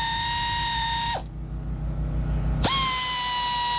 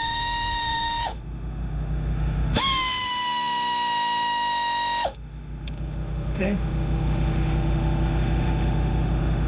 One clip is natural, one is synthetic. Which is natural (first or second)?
first